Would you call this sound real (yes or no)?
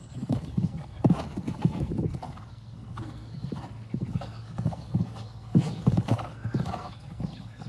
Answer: no